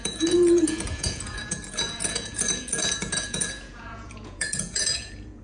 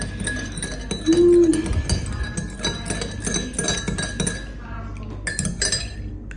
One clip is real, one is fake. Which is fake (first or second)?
first